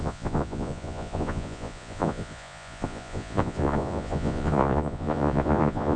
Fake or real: fake